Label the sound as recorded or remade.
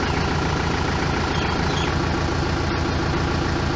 recorded